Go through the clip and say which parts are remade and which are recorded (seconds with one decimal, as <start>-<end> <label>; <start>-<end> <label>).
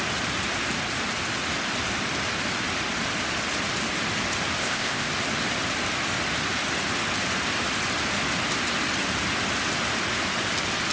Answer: 0.0-4.6 recorded; 4.6-5.1 remade; 5.1-10.9 recorded